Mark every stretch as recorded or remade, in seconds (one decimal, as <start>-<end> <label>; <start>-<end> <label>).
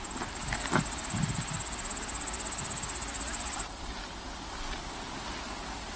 0.0-6.0 recorded